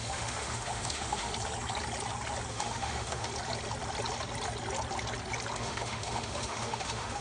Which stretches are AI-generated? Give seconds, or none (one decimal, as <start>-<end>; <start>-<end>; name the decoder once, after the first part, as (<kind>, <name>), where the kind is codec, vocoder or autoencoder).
0.0-1.3 (autoencoder, DAC-VAE); 2.5-3.3; 5.6-7.2